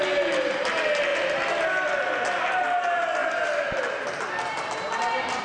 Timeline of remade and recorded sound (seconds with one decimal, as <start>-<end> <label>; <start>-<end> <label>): 0.0-5.4 recorded